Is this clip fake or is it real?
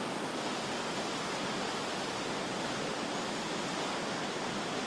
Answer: real